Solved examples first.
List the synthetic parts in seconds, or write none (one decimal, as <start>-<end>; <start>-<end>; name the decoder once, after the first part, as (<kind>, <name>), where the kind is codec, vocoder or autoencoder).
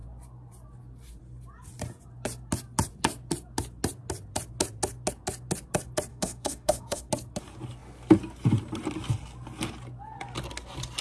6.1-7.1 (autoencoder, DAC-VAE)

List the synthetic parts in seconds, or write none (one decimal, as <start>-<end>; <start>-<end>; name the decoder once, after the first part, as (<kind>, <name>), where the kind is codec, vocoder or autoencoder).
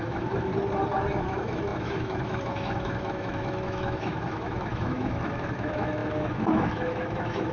0.0-0.5 (autoencoder, DAC-VAE); 1.2-7.5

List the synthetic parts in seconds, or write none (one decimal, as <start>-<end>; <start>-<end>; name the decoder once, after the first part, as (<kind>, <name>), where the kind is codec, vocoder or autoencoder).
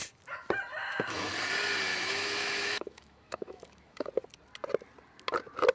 0.8-1.3 (autoencoder, DAC-VAE); 1.9-4.1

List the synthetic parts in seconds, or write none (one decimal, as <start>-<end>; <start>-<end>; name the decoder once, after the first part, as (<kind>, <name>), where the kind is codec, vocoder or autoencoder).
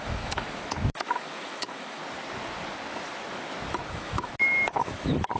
0.0-2.0 (autoencoder, DAC-VAE); 3.9-4.3; 4.8-5.4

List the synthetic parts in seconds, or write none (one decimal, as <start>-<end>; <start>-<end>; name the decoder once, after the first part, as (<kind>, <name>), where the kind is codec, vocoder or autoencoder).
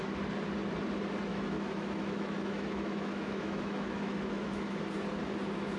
1.3-4.8 (autoencoder, DAC-VAE)